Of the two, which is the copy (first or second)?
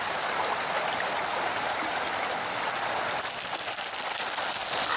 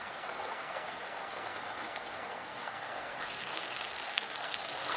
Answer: second